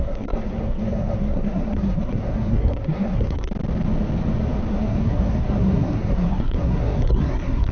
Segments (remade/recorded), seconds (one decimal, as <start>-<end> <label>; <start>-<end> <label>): 0.0-3.5 remade; 3.5-4.7 recorded; 4.7-7.7 remade